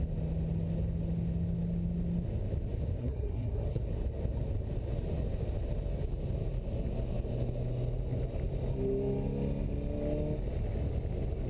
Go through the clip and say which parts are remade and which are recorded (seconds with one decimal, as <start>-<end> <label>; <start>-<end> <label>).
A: 0.0-3.0 recorded; 3.0-3.8 remade; 3.8-11.5 recorded